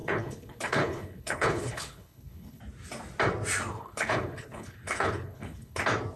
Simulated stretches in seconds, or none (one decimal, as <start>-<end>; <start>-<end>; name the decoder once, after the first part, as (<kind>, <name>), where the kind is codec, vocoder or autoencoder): 0.0-2.6 (codec, HILCodec); 3.7-5.8